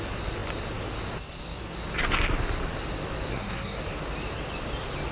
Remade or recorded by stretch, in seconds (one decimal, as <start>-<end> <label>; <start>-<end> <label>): 0.0-3.3 recorded; 3.3-3.8 remade; 3.8-5.1 recorded